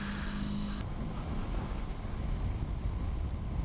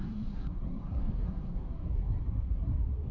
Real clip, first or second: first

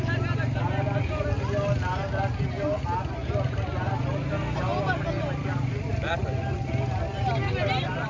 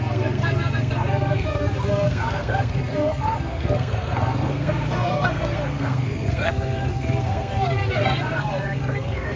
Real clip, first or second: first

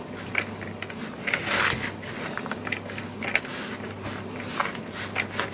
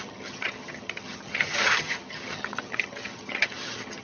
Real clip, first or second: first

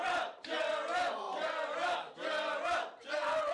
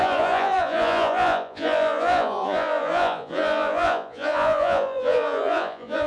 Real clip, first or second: first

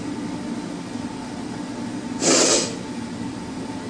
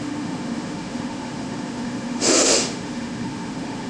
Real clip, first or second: first